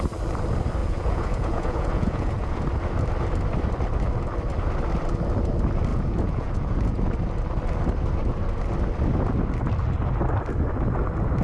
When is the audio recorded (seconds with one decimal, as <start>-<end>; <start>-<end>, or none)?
0.0-0.8; 2.6-5.9; 7.0-11.4